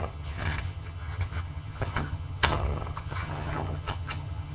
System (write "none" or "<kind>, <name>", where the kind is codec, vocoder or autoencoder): vocoder, HiFi-GAN